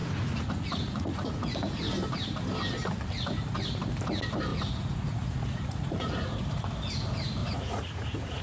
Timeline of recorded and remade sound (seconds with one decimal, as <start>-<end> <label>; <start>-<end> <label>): 0.0-1.9 remade; 1.9-4.5 recorded; 4.5-6.4 remade; 6.4-7.4 recorded; 7.4-8.4 remade